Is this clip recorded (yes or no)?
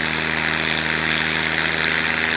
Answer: yes